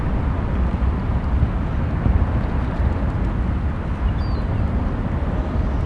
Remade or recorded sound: recorded